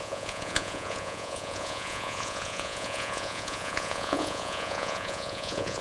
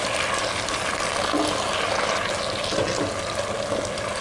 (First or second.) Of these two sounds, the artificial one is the first